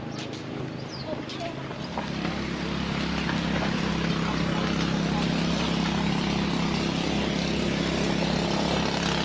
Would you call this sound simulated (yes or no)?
no